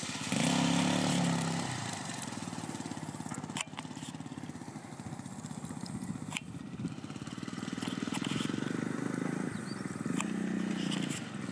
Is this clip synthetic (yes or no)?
no